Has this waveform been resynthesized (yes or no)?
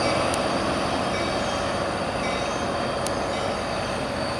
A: no